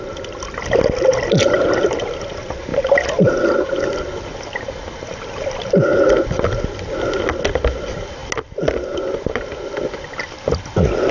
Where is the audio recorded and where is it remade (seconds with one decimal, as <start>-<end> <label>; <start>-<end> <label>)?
0.0-11.1 recorded